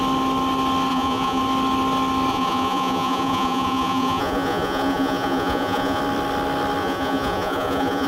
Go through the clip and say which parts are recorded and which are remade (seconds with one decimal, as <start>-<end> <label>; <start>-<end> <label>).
0.0-0.9 recorded; 0.9-1.4 remade; 1.4-2.3 recorded; 2.3-6.0 remade; 6.0-6.8 recorded; 6.8-8.1 remade